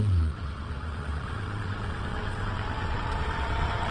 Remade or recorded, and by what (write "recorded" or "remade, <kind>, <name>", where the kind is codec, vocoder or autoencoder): remade, vocoder, WaveNeXt